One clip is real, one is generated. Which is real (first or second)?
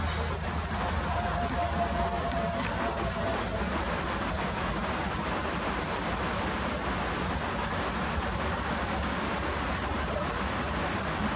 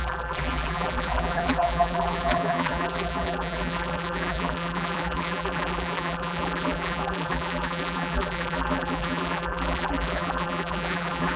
first